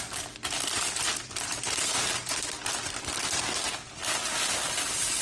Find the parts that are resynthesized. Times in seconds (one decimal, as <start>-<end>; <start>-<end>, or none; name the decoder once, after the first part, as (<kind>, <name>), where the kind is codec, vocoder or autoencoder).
none